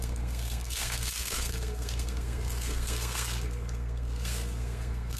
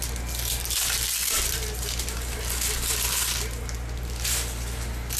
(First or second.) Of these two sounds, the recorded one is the second